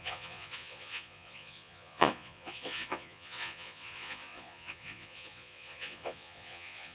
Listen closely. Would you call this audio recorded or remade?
remade